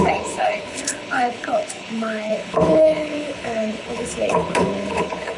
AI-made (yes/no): yes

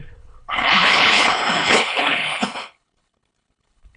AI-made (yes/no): yes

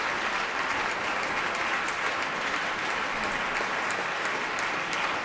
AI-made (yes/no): no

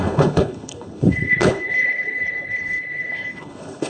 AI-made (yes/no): yes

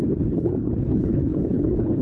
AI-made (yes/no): yes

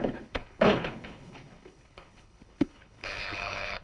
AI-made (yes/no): yes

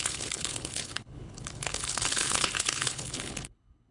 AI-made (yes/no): yes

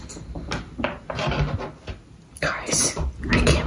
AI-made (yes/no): no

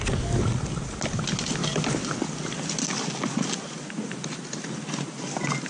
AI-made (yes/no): no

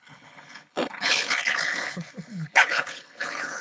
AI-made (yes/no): yes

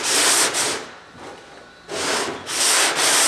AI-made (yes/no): no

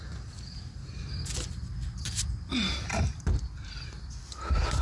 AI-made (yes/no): no